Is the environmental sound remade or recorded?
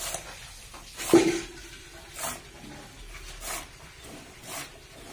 recorded